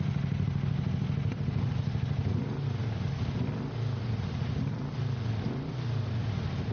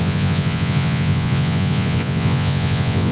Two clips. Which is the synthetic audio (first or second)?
second